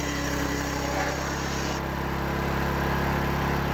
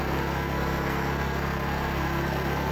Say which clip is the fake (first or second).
second